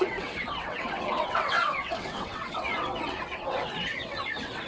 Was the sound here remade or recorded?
remade